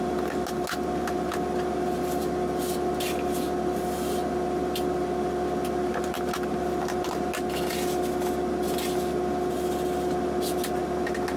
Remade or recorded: recorded